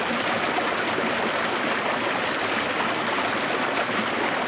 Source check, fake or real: real